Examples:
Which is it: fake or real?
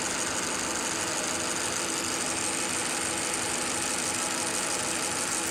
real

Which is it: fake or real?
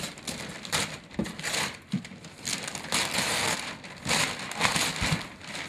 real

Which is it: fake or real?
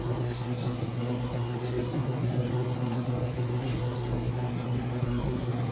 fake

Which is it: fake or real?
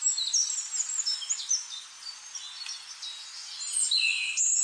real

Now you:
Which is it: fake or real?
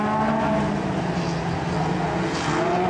real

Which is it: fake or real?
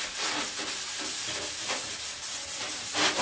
fake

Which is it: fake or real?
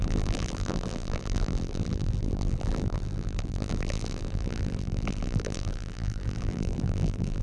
fake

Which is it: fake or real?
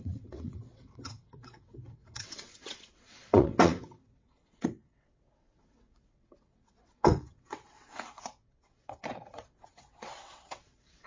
fake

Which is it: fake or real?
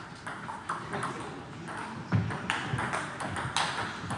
real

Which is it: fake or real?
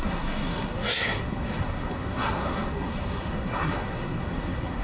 fake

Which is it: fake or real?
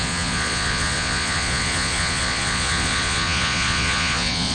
fake